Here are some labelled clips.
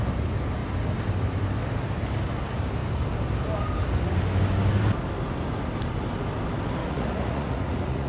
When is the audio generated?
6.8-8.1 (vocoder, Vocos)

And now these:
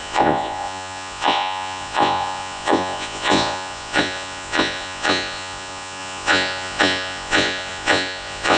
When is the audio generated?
0.0-8.6 (vocoder, Vocos)

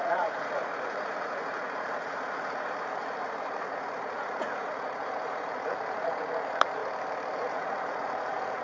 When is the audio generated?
0.0-6.8 (vocoder, Vocos); 7.5-8.6

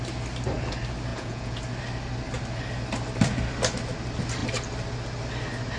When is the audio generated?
1.1-1.6 (vocoder, Vocos)

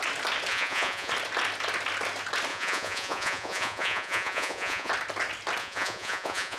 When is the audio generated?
0.5-1.1 (vocoder, Vocos); 2.5-4.9; 5.6-6.6